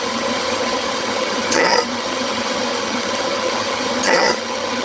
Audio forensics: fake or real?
fake